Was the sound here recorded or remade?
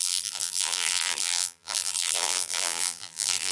remade